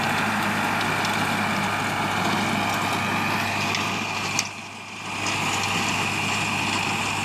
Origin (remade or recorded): recorded